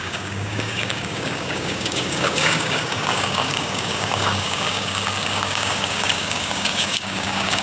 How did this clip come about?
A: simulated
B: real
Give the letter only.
A